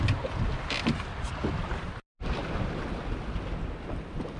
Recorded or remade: recorded